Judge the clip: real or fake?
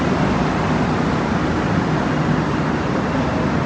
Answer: real